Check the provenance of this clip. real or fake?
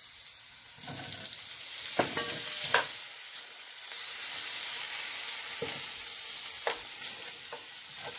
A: real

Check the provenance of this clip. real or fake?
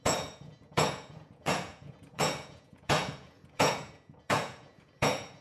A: fake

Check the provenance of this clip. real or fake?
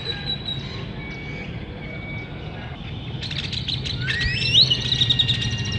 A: real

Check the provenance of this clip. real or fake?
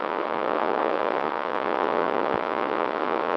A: fake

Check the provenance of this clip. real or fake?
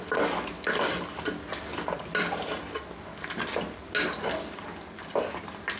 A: real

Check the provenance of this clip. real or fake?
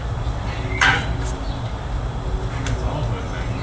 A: real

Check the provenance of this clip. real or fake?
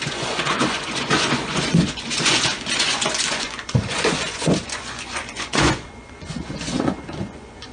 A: fake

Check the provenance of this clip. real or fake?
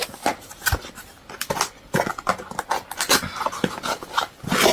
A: real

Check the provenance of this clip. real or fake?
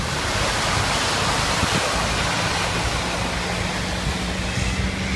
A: real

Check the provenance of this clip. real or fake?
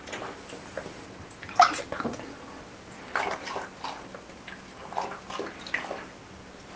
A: real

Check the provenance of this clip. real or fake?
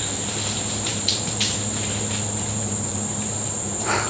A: fake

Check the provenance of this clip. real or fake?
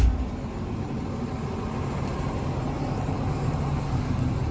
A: real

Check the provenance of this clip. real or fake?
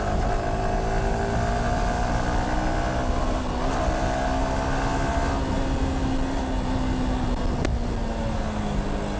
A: real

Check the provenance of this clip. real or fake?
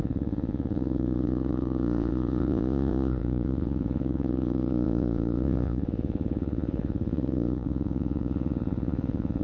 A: fake